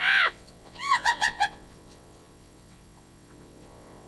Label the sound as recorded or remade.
remade